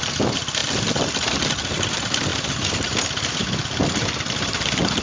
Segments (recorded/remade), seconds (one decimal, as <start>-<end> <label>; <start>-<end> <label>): 0.0-5.0 recorded